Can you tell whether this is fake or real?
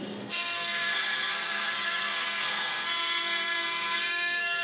fake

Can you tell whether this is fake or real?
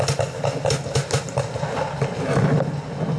real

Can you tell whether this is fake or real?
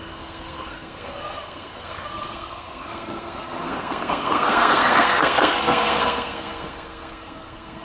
fake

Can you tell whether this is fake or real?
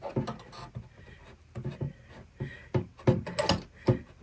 real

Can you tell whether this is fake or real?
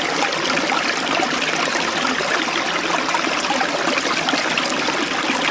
real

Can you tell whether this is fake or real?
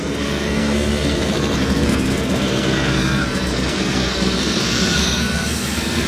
fake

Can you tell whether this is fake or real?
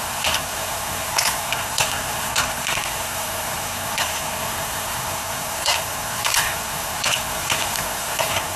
fake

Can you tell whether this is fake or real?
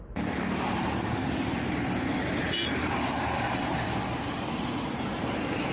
real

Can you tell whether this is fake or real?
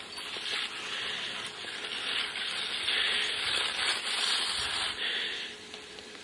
real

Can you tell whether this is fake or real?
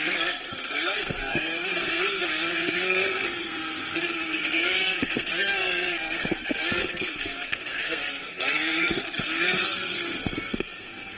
fake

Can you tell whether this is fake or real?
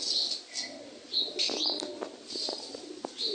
real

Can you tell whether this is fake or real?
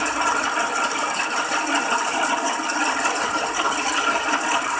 real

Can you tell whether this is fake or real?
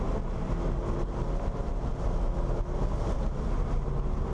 real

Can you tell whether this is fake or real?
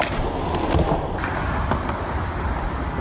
real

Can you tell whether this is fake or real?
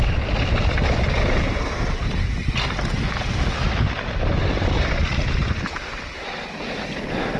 real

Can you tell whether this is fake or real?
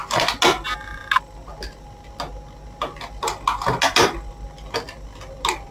real